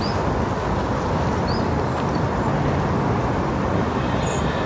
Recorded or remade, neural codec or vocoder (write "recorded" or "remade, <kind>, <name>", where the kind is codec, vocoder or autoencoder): recorded